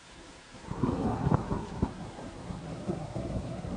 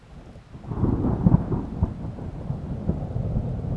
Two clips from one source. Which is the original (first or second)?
second